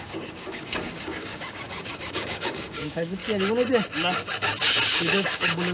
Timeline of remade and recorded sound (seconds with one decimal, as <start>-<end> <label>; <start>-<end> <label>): 0.0-3.2 remade; 3.2-4.9 recorded; 4.9-5.7 remade